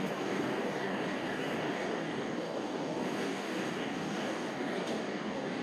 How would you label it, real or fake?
fake